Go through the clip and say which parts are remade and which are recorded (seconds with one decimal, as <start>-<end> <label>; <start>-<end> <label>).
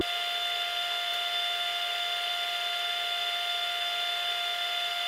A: 0.0-5.1 recorded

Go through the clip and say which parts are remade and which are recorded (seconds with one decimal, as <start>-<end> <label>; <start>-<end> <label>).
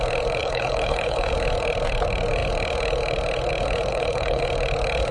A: 0.0-0.4 recorded; 0.4-1.3 remade; 1.3-3.9 recorded; 3.9-4.4 remade; 4.4-5.1 recorded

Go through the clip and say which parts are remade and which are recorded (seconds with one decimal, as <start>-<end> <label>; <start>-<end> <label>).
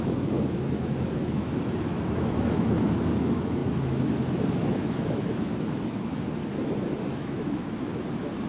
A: 0.0-6.1 remade; 6.1-7.0 recorded; 7.0-8.5 remade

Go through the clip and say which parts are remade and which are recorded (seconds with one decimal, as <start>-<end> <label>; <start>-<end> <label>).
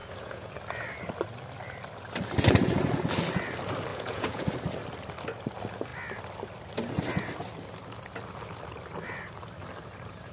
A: 0.0-0.5 remade; 0.5-3.9 recorded; 3.9-4.5 remade; 4.5-10.3 recorded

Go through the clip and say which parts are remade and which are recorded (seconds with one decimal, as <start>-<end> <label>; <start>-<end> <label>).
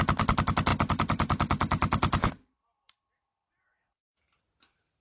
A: 0.0-0.7 recorded; 0.7-3.7 remade; 3.7-5.0 recorded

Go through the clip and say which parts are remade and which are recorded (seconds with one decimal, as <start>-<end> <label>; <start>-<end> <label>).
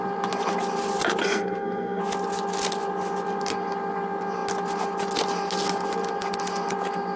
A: 0.0-1.2 recorded; 1.2-2.0 remade; 2.0-7.2 recorded